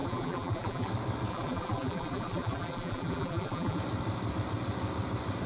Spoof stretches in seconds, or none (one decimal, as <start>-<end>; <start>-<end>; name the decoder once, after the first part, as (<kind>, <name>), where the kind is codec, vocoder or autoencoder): 0.0-0.9 (vocoder, BigVGAN v2); 1.3-3.8